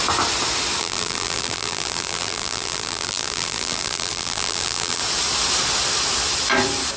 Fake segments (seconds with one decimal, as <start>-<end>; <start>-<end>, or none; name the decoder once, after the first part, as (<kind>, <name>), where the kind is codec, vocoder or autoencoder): 0.8-5.0 (vocoder, BigVGAN v2)